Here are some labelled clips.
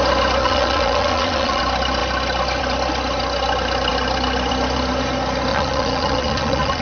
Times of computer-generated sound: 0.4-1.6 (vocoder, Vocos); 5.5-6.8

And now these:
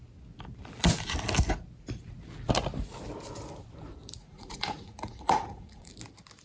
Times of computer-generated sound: 4.2-5.9 (vocoder, Vocos)

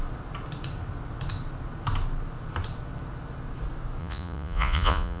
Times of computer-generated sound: 4.0-5.2 (vocoder, Vocos)

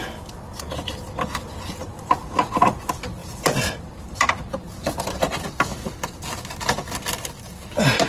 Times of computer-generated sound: none

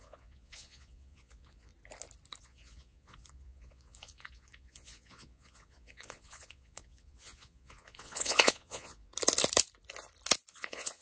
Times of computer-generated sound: 0.0-1.7 (vocoder, Vocos); 2.4-9.1; 10.5-11.0

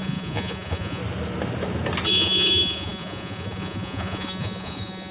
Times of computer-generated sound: 0.0-1.0 (vocoder, Vocos); 2.1-5.1